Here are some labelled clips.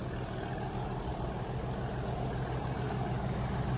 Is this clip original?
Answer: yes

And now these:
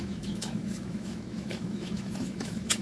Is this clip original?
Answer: no